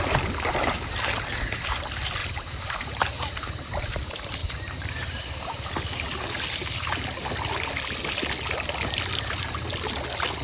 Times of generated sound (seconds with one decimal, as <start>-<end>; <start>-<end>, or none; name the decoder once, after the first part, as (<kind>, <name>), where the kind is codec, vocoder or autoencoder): 2.2-4.0 (vocoder, BigVGAN v2); 4.4-5.7